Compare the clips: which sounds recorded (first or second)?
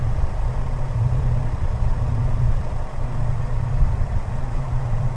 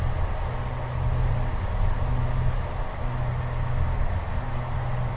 second